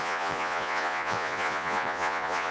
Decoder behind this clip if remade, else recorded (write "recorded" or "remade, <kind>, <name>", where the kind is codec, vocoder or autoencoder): remade, vocoder, Vocos